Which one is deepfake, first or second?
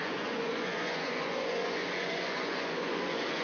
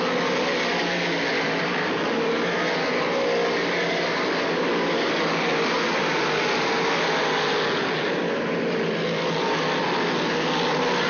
first